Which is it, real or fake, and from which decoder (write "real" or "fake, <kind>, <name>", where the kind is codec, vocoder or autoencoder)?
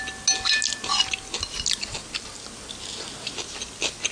real